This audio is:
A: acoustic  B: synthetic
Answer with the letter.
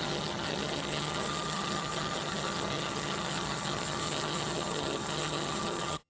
B